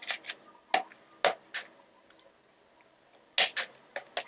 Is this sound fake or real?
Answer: real